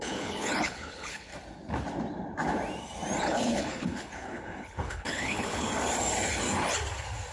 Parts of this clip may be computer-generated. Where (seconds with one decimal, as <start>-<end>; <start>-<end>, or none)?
0.0-1.3; 3.2-5.7